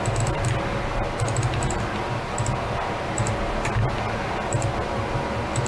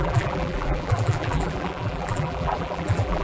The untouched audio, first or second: first